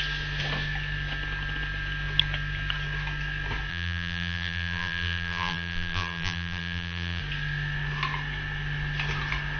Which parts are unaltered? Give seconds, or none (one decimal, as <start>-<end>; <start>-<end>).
0.0-3.7; 7.2-9.6